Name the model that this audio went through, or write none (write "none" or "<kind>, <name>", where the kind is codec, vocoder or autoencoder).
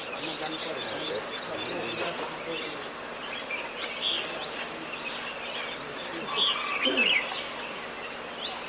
none